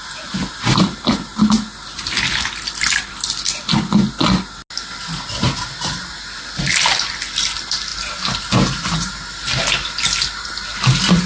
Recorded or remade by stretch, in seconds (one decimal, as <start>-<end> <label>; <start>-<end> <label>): 0.0-11.3 recorded